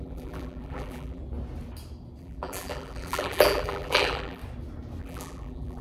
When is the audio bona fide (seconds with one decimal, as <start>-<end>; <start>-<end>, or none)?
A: 1.2-2.2; 4.4-5.0